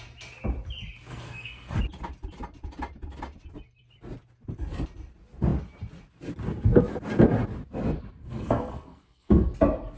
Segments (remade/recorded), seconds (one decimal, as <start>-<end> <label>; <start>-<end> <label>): 0.0-1.1 recorded; 1.1-1.8 remade; 1.8-8.2 recorded; 8.2-9.5 remade; 9.5-10.0 recorded